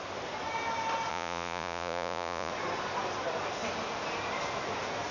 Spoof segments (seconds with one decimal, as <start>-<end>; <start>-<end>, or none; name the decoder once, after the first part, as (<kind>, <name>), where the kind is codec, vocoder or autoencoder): 1.1-2.5 (vocoder, Vocos)